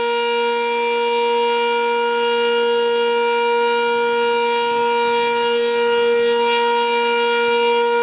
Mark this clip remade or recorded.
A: recorded